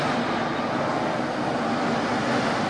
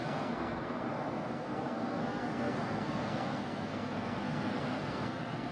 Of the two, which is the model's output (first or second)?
second